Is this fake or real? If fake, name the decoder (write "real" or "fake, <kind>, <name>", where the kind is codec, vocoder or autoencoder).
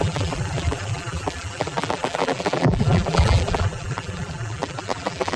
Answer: fake, vocoder, BigVGAN v2